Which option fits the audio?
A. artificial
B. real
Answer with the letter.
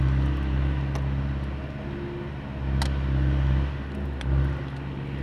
B